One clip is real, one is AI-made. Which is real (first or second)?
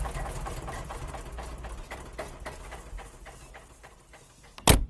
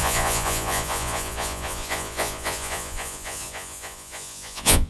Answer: first